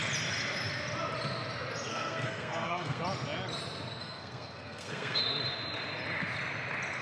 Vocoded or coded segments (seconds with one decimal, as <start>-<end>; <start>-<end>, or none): 1.9-3.0; 4.0-5.2